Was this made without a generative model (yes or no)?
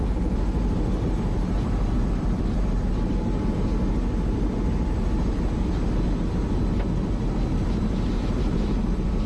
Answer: yes